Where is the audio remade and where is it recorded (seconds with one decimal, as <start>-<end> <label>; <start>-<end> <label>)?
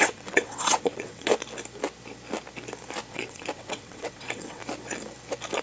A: 0.0-1.3 remade; 1.3-3.1 recorded; 3.1-4.6 remade; 4.6-5.6 recorded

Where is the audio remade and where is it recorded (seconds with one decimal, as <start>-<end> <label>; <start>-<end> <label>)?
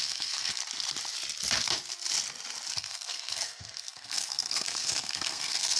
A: 0.0-0.6 remade; 0.6-2.7 recorded; 2.7-5.8 remade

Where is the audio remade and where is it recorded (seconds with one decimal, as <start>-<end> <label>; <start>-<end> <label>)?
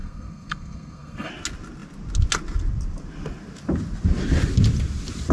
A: 0.0-1.3 remade; 1.3-5.3 recorded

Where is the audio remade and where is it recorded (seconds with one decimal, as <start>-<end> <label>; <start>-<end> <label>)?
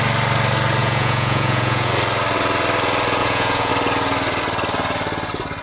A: 0.0-0.8 recorded; 0.8-1.9 remade; 1.9-3.2 recorded; 3.2-3.7 remade; 3.7-5.6 recorded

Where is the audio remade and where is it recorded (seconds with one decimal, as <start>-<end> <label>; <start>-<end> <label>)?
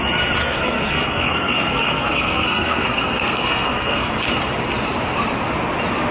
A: 0.0-0.4 recorded; 0.4-4.1 remade; 4.1-6.1 recorded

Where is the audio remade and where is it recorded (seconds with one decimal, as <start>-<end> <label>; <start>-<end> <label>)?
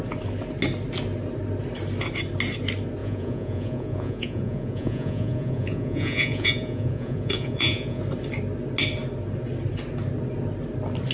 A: 0.0-3.0 recorded; 3.0-8.0 remade; 8.0-11.1 recorded